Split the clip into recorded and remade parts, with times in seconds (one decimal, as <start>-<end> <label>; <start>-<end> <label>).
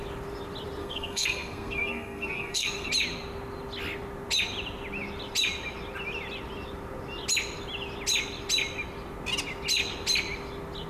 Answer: 0.0-0.8 recorded; 0.8-2.9 remade; 2.9-10.9 recorded